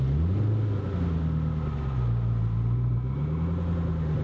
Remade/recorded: recorded